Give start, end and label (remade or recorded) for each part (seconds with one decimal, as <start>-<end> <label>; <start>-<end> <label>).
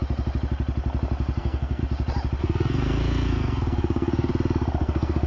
0.0-1.4 recorded; 1.4-1.8 remade; 1.8-2.4 recorded; 2.4-4.3 remade; 4.3-4.8 recorded; 4.8-5.3 remade